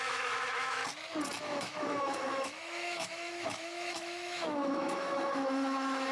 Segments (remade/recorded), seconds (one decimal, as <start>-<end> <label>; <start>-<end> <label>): 0.0-0.8 remade; 0.8-1.4 recorded; 1.4-6.1 remade